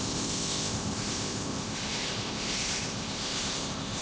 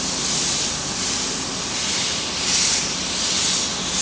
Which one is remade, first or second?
first